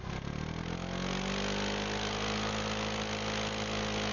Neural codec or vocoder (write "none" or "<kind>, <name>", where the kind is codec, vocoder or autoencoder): none